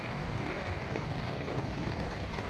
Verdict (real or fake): fake